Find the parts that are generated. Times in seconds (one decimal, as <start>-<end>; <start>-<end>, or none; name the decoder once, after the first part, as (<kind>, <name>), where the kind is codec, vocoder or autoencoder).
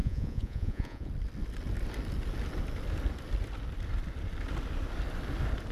0.0-1.1 (vocoder, Vocos)